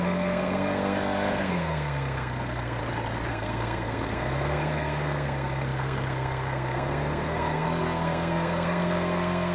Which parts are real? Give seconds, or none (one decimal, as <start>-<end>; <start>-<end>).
2.8-3.3